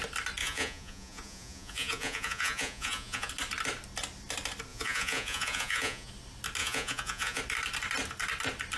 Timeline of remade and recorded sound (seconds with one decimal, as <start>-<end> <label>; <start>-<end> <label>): 0.0-0.4 recorded; 0.4-3.3 remade; 3.3-4.7 recorded; 4.7-6.1 remade; 6.1-6.6 recorded; 6.6-7.4 remade; 7.4-8.8 recorded